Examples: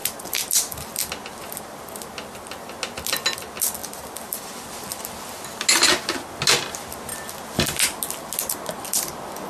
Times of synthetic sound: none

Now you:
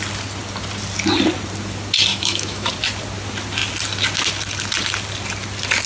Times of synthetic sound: 2.1-2.7 (autoencoder, DAC-VAE)

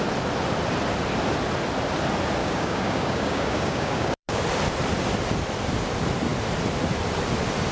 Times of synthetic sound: 2.4-4.4 (codec, DAC)

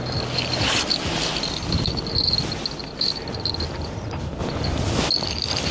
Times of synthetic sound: 2.8-3.3 (vocoder, BigVGAN v2); 4.4-5.1

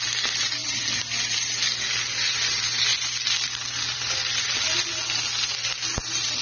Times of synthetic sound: none